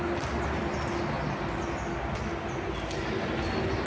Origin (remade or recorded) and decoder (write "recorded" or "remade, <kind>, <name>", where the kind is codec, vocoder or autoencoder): recorded